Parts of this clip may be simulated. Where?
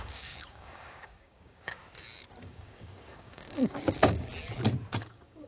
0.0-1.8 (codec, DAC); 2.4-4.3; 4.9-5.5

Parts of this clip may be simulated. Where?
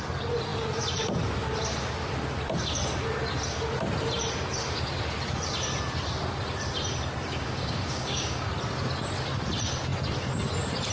7.3-8.5 (codec, DAC)